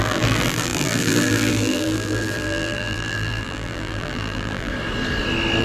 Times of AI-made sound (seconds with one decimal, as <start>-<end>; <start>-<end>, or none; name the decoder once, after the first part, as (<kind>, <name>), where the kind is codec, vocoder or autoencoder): 0.0-4.7 (vocoder, BigVGAN v2)